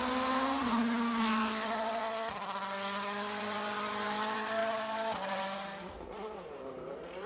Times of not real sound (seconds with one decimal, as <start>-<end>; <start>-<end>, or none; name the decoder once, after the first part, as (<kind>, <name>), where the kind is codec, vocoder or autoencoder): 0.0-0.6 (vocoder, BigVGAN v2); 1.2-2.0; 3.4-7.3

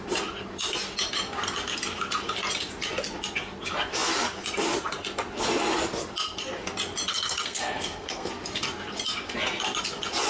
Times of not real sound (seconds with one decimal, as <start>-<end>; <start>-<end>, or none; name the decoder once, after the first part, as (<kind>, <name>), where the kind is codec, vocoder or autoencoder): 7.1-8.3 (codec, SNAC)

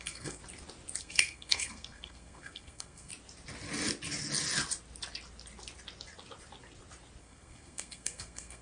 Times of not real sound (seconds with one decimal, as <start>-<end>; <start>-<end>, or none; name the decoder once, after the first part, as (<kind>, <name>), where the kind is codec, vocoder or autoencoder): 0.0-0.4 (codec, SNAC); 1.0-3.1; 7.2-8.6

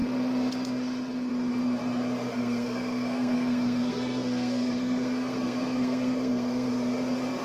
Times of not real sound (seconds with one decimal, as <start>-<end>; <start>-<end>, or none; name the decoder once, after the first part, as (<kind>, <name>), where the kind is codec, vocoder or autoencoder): 2.3-6.7 (codec, SNAC)